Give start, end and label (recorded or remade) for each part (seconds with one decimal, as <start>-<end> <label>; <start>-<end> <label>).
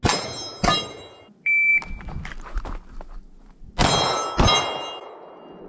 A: 0.0-5.7 recorded